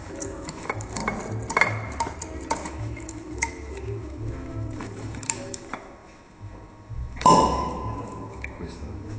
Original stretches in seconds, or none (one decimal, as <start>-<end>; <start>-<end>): 1.0-2.7